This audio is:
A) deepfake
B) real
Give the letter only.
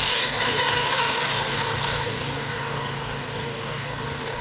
A